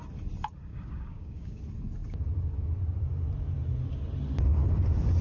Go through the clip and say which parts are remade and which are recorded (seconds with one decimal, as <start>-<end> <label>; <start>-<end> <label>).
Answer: 0.0-0.7 recorded; 0.7-1.6 remade; 1.6-5.2 recorded

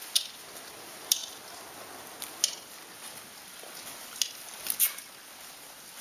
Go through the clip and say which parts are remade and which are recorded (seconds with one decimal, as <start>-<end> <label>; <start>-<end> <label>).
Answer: 0.0-6.0 recorded

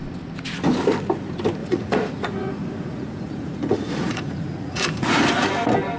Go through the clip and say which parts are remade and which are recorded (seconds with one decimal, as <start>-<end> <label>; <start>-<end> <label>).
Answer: 0.0-1.6 recorded; 1.6-5.2 remade; 5.2-6.0 recorded